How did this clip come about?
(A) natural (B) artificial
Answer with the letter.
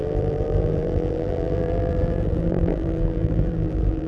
B